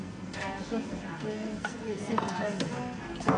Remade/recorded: remade